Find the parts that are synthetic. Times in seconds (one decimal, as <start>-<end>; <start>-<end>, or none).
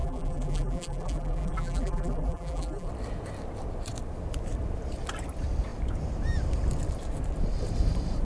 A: 0.0-2.9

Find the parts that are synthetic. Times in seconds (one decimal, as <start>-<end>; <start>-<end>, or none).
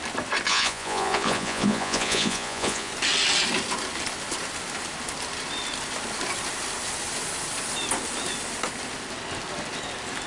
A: 0.5-2.9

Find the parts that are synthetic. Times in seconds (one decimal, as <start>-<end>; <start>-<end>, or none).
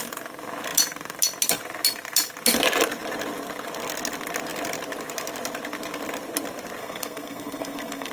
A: 6.8-8.1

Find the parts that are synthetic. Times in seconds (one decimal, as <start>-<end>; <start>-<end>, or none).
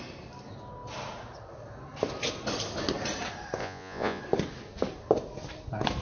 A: 3.6-4.2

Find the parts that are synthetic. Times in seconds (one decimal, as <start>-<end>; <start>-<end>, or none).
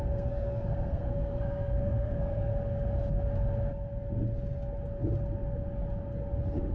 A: 0.0-2.5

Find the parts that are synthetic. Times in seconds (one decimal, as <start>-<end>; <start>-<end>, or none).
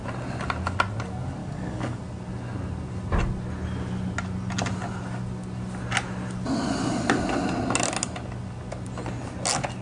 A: 1.4-2.0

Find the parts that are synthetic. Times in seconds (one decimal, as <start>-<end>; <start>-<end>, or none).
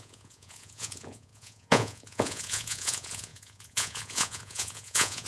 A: 0.0-5.3